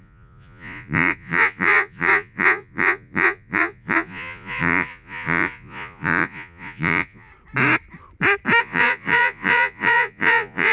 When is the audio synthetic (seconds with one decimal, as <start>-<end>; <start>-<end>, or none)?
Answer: 0.0-7.3; 8.6-10.7